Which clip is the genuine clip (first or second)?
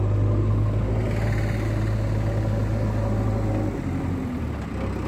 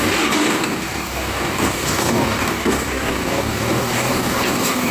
first